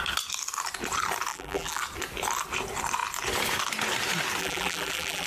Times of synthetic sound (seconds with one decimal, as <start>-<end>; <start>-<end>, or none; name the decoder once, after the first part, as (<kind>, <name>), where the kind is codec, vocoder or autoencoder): 1.3-1.8 (vocoder, BigVGAN v2); 4.4-5.3